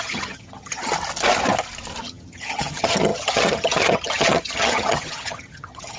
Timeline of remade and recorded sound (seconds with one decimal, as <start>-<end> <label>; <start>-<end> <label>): 0.0-0.9 remade; 0.9-2.0 recorded; 2.0-6.0 remade